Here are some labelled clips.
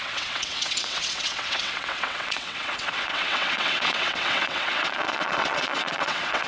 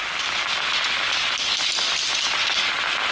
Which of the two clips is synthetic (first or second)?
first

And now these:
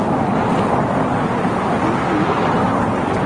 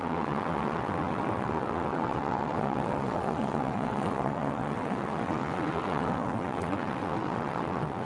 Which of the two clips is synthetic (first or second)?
second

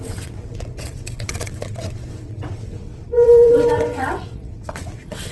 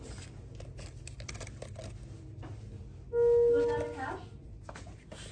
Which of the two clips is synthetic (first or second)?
first